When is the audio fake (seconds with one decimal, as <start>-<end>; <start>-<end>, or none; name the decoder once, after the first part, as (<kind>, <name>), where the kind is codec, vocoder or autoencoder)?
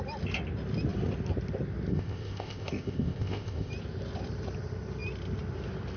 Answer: 1.9-3.7 (codec, ZipCodec)